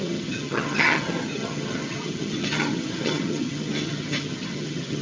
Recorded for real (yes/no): no